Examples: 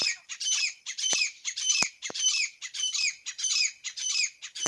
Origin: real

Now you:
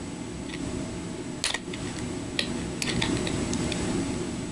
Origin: real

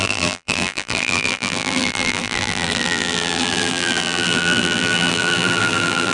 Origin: fake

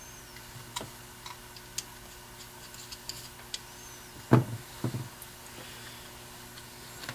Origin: real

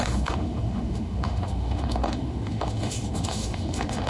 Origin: fake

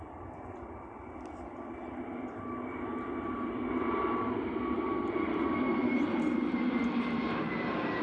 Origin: fake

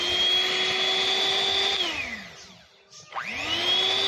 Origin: real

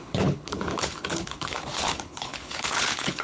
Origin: fake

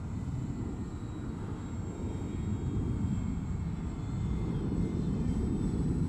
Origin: real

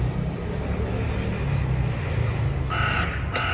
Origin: real